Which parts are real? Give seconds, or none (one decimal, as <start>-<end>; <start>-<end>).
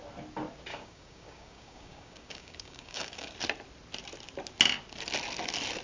0.0-0.7; 3.3-5.8